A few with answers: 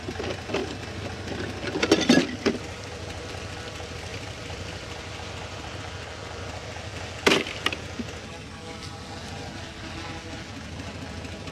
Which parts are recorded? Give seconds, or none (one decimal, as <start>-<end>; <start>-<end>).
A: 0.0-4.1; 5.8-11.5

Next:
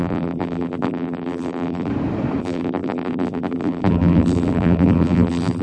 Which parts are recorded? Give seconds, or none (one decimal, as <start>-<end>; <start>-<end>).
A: 1.9-2.4

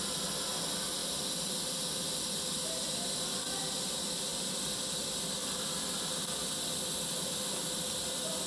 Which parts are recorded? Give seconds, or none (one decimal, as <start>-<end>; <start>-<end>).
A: 0.0-1.0; 1.6-4.3; 6.0-8.5